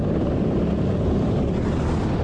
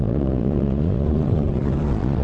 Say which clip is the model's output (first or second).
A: second